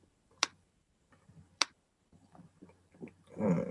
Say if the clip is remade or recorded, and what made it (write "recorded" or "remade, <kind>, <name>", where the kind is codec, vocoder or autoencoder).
remade, vocoder, BigVGAN v2